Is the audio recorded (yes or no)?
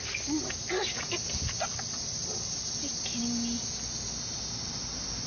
yes